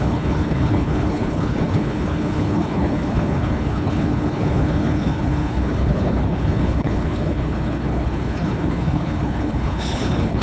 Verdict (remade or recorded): remade